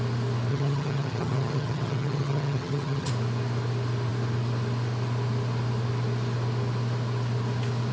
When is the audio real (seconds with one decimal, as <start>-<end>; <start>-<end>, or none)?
0.0-0.5; 3.1-7.9